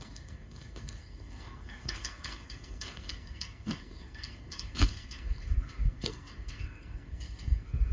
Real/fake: fake